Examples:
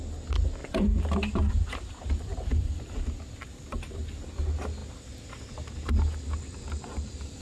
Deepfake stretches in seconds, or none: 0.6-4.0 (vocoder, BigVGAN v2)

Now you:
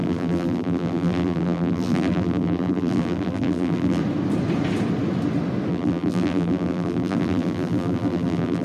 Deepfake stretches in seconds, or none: 0.0-4.0 (vocoder, BigVGAN v2); 5.7-8.6

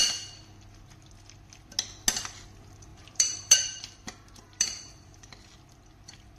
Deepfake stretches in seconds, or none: 2.9-5.3 (vocoder, BigVGAN v2)